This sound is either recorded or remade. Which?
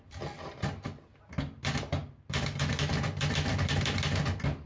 recorded